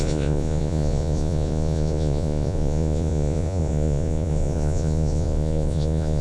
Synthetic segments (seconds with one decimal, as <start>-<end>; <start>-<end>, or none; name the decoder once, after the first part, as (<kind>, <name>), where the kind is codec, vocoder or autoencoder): 0.0-6.2 (vocoder, Vocos)